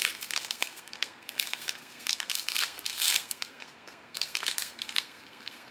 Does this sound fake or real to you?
fake